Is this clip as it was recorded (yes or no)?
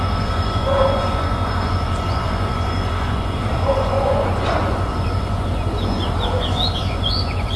no